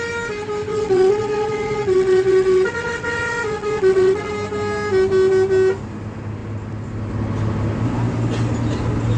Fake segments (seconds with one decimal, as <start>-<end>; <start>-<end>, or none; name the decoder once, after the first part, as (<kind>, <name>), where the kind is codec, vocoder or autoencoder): 0.7-4.3 (vocoder, WaveNeXt)